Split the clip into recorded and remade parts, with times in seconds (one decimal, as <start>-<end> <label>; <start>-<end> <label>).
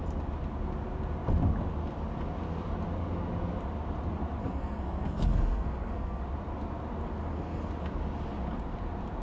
0.0-4.4 recorded; 4.4-6.2 remade; 6.2-7.2 recorded; 7.2-7.7 remade; 7.7-9.2 recorded